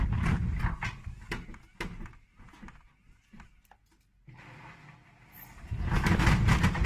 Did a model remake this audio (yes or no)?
no